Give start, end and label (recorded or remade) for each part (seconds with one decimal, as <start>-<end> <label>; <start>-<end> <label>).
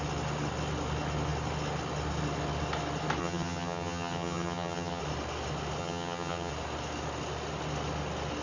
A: 0.0-3.2 recorded; 3.2-5.0 remade; 5.0-5.8 recorded; 5.8-6.5 remade; 6.5-8.4 recorded